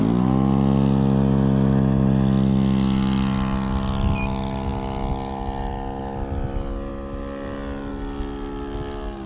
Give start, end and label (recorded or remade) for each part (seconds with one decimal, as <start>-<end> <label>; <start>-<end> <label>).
0.0-9.3 recorded